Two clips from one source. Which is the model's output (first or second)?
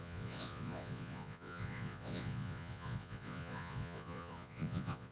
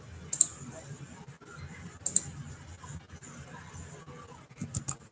first